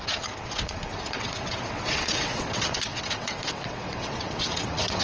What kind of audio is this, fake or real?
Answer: fake